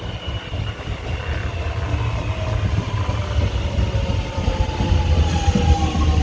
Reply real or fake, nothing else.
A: real